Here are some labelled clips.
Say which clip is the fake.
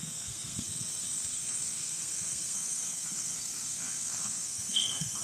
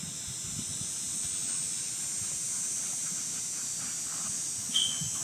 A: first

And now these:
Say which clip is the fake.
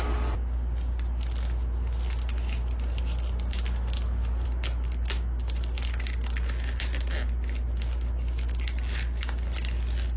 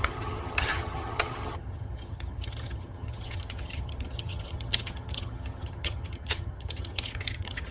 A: second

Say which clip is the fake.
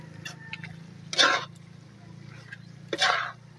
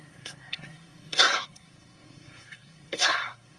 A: second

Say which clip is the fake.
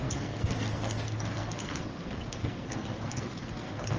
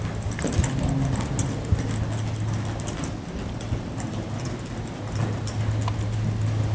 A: first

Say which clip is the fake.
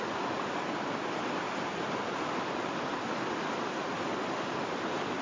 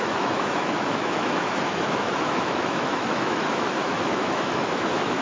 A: second